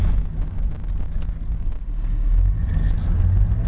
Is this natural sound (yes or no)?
yes